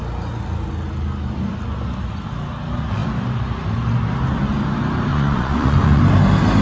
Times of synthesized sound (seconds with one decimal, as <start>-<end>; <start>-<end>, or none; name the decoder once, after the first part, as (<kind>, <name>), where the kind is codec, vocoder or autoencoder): 5.1-6.0 (vocoder, Vocos)